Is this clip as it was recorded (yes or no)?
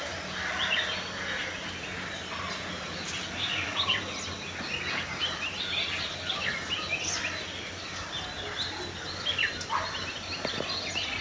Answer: yes